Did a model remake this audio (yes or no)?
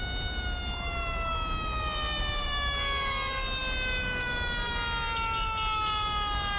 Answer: no